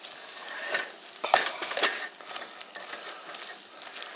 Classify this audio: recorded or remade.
recorded